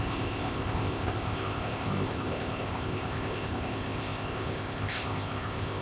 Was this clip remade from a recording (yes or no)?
yes